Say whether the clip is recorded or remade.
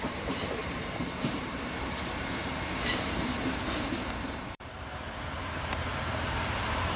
remade